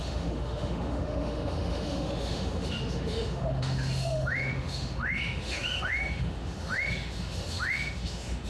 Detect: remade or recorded remade